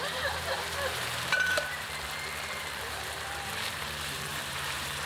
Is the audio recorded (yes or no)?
no